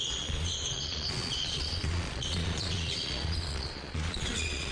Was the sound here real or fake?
fake